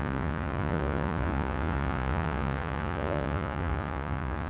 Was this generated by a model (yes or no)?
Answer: yes